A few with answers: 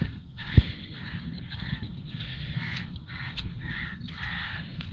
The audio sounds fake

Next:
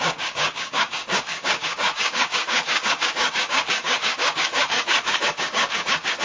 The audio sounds fake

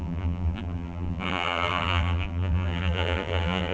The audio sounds fake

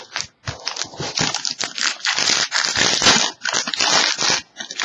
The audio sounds real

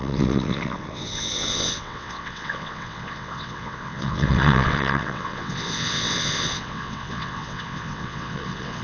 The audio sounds fake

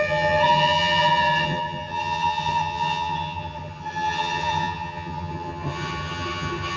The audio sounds fake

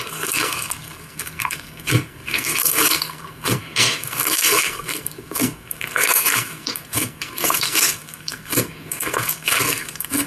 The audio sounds fake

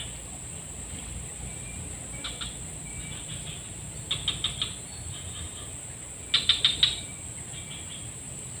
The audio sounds real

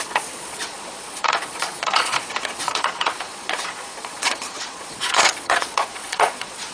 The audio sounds fake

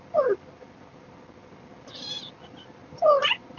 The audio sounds real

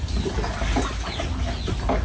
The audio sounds real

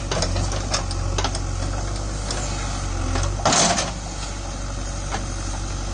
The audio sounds real